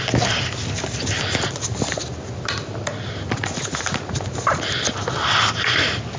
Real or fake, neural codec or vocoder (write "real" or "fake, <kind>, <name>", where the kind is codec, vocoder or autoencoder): real